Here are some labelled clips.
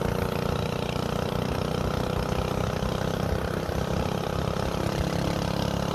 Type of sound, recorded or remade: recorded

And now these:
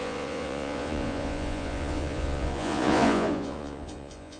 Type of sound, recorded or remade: remade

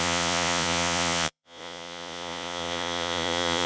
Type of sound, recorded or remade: remade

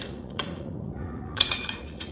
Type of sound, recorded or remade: remade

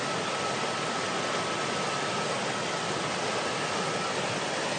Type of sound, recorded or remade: recorded